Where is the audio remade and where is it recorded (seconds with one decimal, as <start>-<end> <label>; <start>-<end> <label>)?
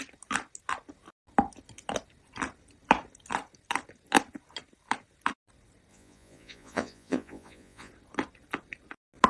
0.0-5.9 recorded; 5.9-7.9 remade; 7.9-9.3 recorded